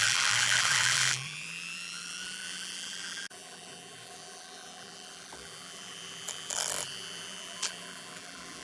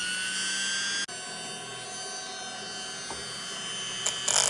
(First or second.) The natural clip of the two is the second